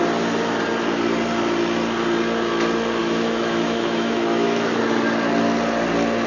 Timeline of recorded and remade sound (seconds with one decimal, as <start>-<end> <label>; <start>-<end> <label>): 0.0-3.0 recorded; 3.0-4.8 remade; 4.8-6.3 recorded